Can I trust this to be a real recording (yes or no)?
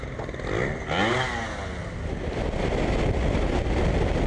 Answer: yes